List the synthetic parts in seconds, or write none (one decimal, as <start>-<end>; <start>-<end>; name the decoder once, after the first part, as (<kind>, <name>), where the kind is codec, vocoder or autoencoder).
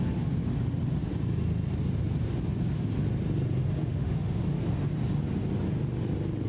3.9-4.5 (autoencoder, DAC-VAE)